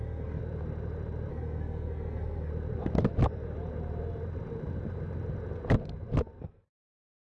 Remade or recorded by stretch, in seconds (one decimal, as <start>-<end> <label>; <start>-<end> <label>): 0.0-0.4 remade; 0.4-1.3 recorded; 1.3-2.5 remade; 2.5-6.4 recorded; 6.4-7.3 remade